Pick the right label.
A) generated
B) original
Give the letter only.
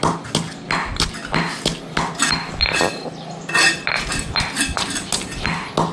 B